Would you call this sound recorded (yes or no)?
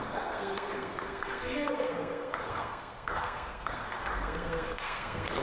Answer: no